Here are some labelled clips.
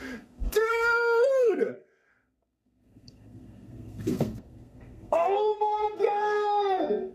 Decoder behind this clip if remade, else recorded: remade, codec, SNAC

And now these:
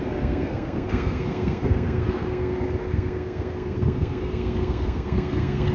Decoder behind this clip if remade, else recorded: remade, codec, SNAC